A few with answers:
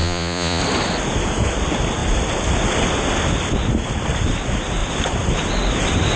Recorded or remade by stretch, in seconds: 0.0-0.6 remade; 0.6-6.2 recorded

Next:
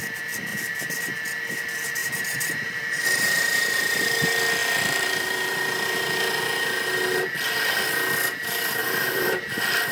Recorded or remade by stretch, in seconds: 0.0-2.0 recorded; 2.0-3.0 remade; 3.0-4.6 recorded; 4.6-6.4 remade; 6.4-8.8 recorded; 8.8-9.5 remade; 9.5-9.9 recorded

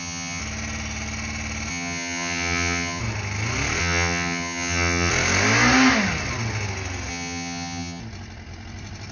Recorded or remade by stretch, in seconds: 0.0-0.4 remade; 0.4-1.7 recorded; 1.7-3.0 remade; 3.0-3.8 recorded; 3.8-5.1 remade; 5.1-7.1 recorded; 7.1-8.0 remade; 8.0-9.1 recorded

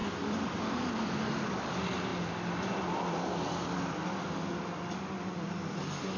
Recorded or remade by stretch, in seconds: 0.0-6.2 recorded